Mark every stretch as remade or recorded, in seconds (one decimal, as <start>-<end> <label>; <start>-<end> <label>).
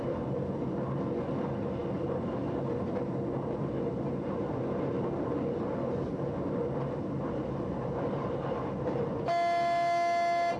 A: 0.0-10.6 recorded